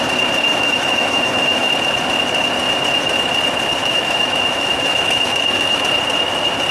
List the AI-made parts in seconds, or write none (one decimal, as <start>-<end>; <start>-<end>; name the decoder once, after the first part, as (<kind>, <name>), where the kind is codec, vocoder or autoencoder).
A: 0.5-1.7 (autoencoder, DAC-VAE); 3.8-5.8